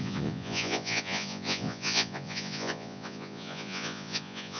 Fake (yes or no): yes